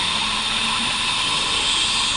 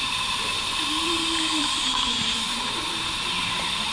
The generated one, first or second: second